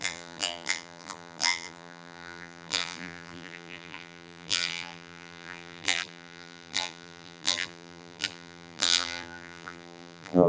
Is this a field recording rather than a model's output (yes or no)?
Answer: no